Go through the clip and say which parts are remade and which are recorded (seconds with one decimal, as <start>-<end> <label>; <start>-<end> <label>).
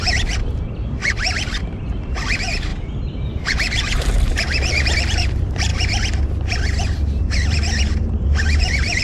0.0-5.7 remade; 5.7-7.2 recorded; 7.2-9.0 remade